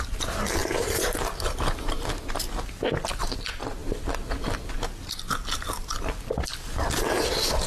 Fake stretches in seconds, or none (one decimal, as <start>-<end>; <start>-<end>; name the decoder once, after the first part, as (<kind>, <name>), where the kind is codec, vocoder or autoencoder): 0.6-2.2 (vocoder, BigVGAN v2)